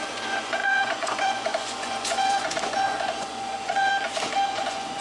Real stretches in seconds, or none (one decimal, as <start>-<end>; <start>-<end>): 3.9-4.5